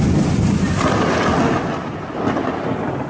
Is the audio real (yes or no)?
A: yes